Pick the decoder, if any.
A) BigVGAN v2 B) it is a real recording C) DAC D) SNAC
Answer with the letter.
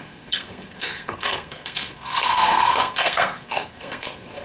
D